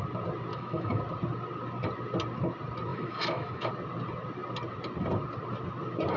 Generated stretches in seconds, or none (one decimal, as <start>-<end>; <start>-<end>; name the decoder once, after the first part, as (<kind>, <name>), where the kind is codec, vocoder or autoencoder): 0.5-1.0 (autoencoder, DAC-VAE); 2.9-3.7